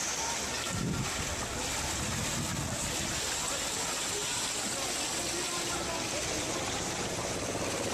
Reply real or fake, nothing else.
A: real